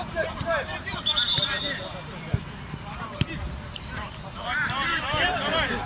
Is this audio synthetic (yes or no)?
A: yes